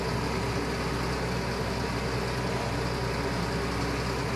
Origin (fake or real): real